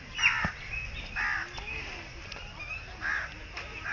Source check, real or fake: real